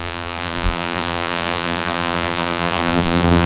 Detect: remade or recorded remade